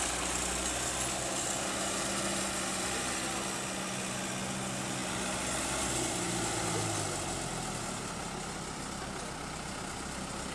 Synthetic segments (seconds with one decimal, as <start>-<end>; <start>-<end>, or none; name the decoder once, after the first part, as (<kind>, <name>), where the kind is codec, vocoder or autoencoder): none

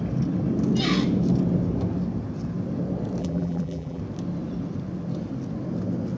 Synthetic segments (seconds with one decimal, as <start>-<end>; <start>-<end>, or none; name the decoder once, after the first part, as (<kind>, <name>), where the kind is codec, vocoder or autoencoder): 3.2-4.0 (vocoder, BigVGAN v2)

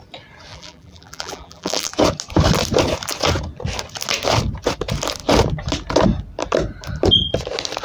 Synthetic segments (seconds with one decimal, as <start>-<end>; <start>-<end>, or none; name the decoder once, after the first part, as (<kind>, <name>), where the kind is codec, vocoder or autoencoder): 0.5-1.9 (vocoder, BigVGAN v2)

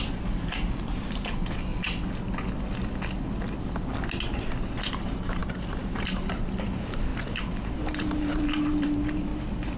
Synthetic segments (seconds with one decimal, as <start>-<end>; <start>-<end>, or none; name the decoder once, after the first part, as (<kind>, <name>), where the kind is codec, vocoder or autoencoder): 0.0-1.7 (vocoder, BigVGAN v2); 4.8-9.3

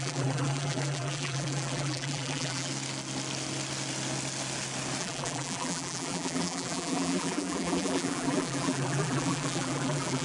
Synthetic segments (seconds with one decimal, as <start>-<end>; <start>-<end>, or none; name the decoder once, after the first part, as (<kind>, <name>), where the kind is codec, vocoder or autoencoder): 0.0-2.7 (vocoder, BigVGAN v2); 5.0-10.2

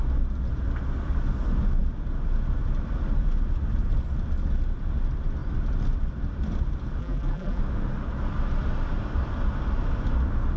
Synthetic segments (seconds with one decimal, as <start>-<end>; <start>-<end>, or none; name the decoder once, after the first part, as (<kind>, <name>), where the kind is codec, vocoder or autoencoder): 7.0-7.6 (vocoder, BigVGAN v2)

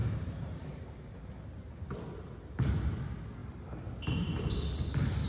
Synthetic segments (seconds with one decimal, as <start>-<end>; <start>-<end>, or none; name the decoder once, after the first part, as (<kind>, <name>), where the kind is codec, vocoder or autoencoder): 0.0-1.3 (vocoder, BigVGAN v2)

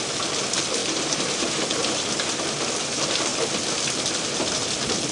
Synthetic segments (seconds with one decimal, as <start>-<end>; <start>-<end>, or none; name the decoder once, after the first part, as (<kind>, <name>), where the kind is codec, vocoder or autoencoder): 0.8-2.0 (vocoder, BigVGAN v2)